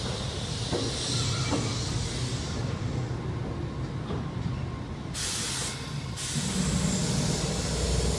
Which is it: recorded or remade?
recorded